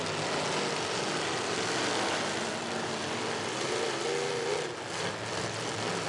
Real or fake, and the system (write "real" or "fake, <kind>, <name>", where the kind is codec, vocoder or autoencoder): real